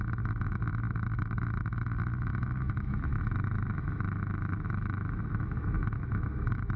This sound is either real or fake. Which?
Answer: fake